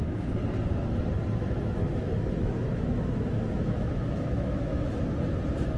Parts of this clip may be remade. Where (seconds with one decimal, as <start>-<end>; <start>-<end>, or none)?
1.4-4.9